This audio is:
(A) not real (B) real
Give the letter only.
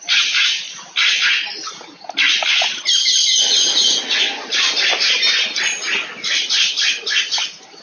B